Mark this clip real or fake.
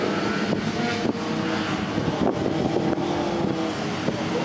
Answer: real